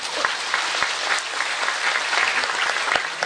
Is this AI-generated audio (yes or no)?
no